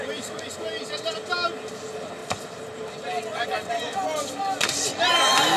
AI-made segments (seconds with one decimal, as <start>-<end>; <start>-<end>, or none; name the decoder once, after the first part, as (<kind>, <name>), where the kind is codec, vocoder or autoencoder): 2.2-2.9 (vocoder, BigVGAN v2)